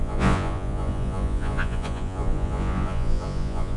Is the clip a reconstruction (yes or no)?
yes